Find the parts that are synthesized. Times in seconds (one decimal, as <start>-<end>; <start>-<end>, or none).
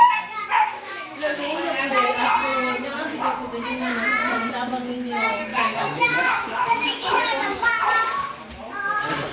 0.7-1.6; 5.5-7.2